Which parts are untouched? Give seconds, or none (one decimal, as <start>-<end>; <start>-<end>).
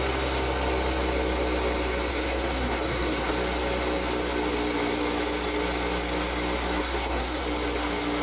0.0-2.1; 3.3-6.8; 7.4-8.2